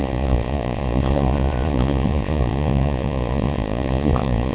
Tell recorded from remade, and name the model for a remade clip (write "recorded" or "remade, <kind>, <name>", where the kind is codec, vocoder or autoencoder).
remade, vocoder, Vocos